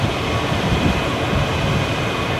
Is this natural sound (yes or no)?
yes